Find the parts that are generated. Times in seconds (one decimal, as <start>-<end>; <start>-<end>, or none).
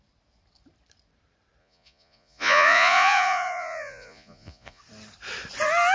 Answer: 1.6-4.8